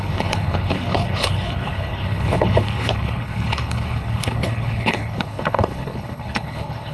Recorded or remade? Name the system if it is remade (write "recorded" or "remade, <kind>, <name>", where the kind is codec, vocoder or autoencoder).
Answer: remade, codec, HILCodec